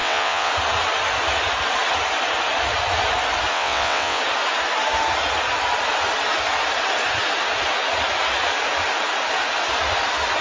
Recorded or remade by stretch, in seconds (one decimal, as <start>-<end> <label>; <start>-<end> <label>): 0.0-0.5 remade; 0.5-3.5 recorded; 3.5-4.2 remade; 4.2-10.4 recorded